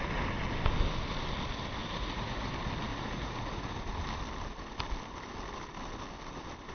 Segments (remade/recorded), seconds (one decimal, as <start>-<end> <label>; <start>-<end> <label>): 0.0-1.8 recorded; 1.8-2.5 remade; 2.5-2.9 recorded; 2.9-3.7 remade; 3.7-6.7 recorded